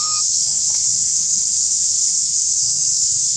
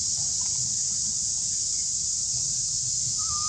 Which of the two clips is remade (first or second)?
first